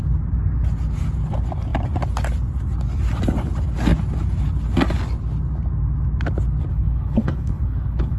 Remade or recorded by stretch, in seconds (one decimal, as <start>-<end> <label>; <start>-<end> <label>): 0.0-6.7 recorded; 6.7-8.2 remade